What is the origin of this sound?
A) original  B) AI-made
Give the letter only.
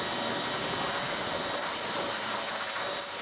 A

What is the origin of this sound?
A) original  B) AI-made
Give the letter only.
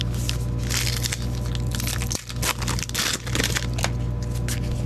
A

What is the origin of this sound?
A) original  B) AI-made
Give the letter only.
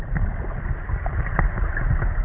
A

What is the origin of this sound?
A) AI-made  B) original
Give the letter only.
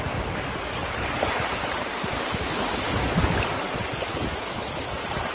B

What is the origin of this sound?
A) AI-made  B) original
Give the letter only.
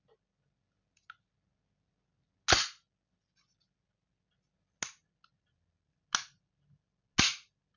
B